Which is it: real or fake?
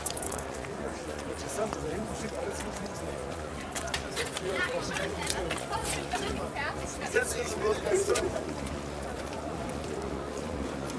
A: fake